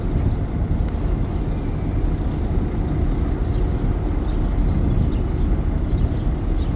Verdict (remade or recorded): recorded